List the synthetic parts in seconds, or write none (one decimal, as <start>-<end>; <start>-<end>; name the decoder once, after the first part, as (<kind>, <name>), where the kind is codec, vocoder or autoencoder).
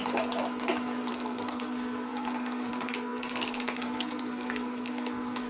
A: 1.1-5.5 (codec, SNAC)